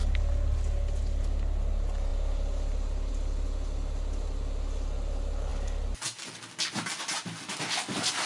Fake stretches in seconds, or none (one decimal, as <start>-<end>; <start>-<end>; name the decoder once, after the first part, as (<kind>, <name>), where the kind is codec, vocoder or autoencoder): none